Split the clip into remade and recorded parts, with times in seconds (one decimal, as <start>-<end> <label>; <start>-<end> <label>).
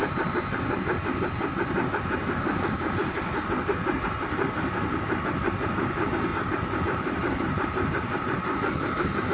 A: 0.0-6.3 recorded; 6.3-9.3 remade